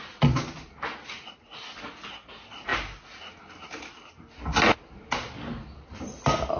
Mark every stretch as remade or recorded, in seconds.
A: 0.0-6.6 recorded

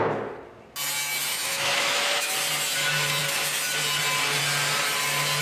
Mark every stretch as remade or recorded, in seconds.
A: 0.0-1.3 recorded; 1.3-2.3 remade; 2.3-5.4 recorded

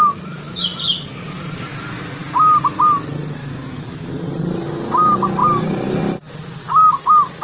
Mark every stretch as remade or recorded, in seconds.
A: 0.0-3.4 recorded; 3.4-4.1 remade; 4.1-7.4 recorded

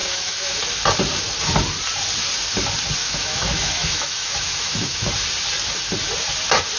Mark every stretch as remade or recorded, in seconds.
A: 0.0-0.6 remade; 0.6-3.0 recorded; 3.0-5.1 remade; 5.1-6.8 recorded

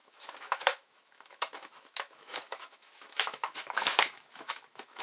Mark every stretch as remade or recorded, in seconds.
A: 0.0-5.0 remade

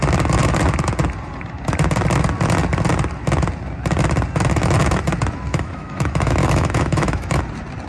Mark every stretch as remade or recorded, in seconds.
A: 0.0-5.5 recorded; 5.5-7.4 remade; 7.4-7.9 recorded

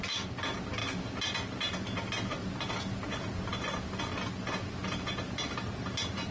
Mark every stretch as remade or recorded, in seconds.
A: 0.0-6.3 recorded

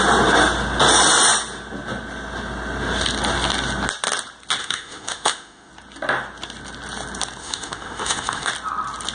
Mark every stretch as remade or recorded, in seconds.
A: 0.0-4.6 recorded; 4.6-5.7 remade; 5.7-7.4 recorded; 7.4-8.5 remade; 8.5-9.1 recorded